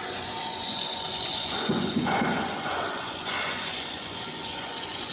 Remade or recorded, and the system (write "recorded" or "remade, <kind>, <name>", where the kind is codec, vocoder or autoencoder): remade, vocoder, Vocos